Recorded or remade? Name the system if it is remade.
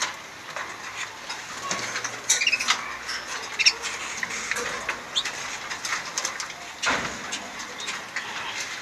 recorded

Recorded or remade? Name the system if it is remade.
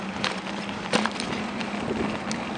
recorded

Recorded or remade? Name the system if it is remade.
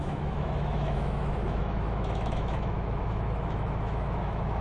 remade, autoencoder, DAC-VAE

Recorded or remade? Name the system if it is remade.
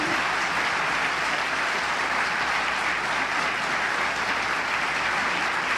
recorded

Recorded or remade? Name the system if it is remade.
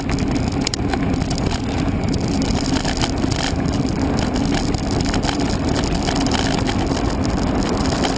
recorded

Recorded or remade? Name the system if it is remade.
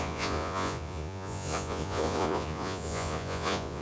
remade, vocoder, Vocos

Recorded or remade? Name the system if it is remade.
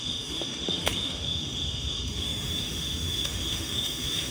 remade, autoencoder, DAC-VAE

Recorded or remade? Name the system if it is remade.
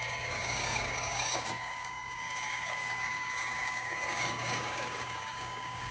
remade, codec, DAC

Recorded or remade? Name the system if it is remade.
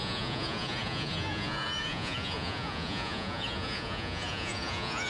remade, vocoder, Vocos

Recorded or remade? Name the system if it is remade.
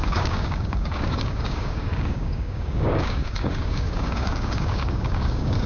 remade, codec, DAC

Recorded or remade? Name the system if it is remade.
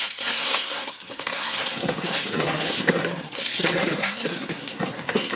remade, codec, SNAC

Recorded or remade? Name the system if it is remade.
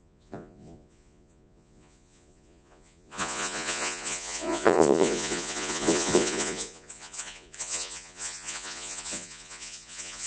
remade, vocoder, Vocos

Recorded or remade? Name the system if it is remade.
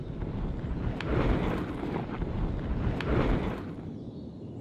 remade, vocoder, BigVGAN v2